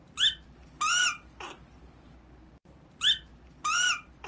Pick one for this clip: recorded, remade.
recorded